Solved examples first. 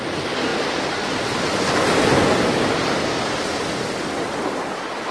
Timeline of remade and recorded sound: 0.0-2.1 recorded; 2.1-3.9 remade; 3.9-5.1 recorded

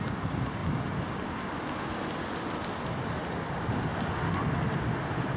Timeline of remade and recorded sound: 0.0-0.6 remade; 0.6-3.3 recorded; 3.3-3.9 remade; 3.9-4.9 recorded; 4.9-5.4 remade

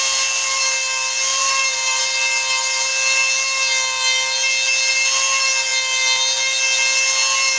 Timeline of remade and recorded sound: 0.0-1.3 recorded; 1.3-2.0 remade; 2.0-7.6 recorded

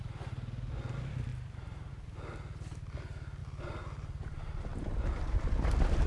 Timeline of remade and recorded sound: 0.0-1.3 recorded; 1.3-1.9 remade; 1.9-3.4 recorded; 3.4-5.1 remade; 5.1-6.1 recorded

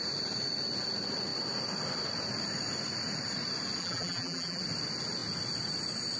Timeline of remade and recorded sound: 0.0-3.8 recorded; 3.8-4.6 remade; 4.6-6.2 recorded